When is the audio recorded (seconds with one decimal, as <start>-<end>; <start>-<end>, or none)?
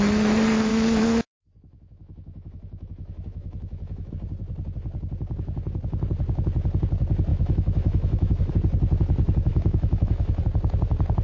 0.0-0.7; 4.1-7.3; 8.5-9.5; 10.4-11.2